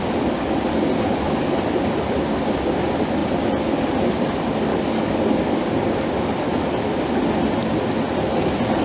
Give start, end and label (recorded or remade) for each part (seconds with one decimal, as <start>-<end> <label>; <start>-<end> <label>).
0.0-4.7 recorded; 4.7-5.8 remade; 5.8-8.8 recorded